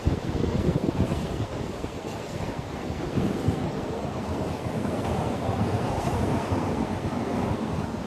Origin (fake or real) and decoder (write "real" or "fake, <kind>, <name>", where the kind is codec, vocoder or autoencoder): fake, codec, SNAC